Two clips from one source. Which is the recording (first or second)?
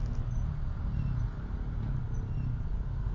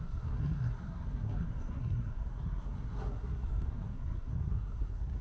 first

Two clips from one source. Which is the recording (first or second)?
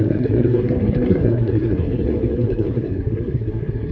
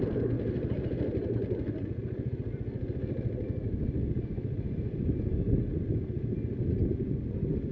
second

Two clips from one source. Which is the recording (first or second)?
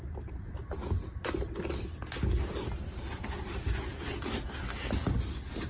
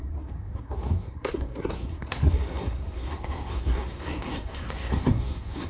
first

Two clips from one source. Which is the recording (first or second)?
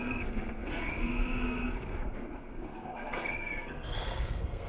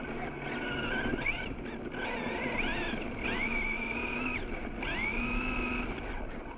second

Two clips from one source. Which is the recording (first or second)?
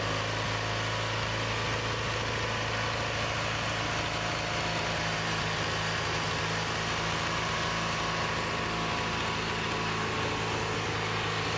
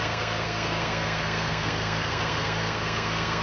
first